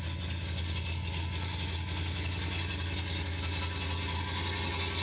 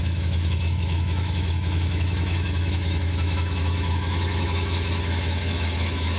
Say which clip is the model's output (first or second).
second